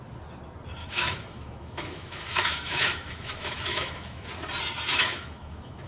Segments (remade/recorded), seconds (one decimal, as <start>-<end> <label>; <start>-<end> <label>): 0.0-0.8 recorded; 0.8-4.3 remade; 4.3-4.9 recorded; 4.9-5.9 remade